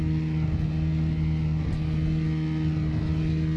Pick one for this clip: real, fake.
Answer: real